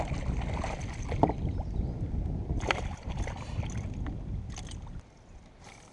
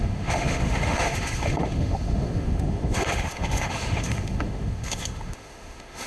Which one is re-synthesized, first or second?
second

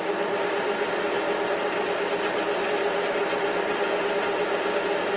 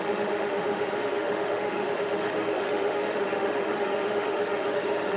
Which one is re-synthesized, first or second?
second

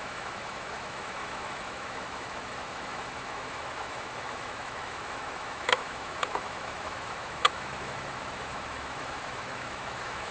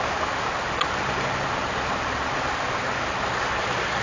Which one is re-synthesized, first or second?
first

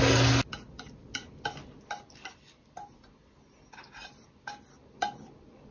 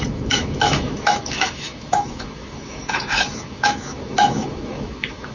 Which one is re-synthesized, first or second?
second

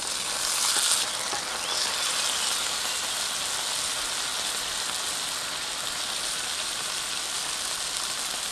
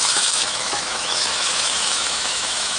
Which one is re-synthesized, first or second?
second